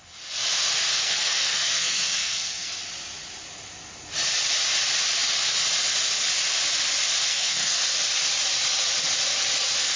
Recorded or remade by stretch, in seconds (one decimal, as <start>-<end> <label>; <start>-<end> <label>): 0.0-0.9 recorded; 0.9-2.8 remade; 2.8-7.3 recorded; 7.3-7.8 remade; 7.8-10.0 recorded